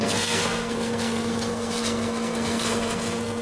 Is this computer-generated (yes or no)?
yes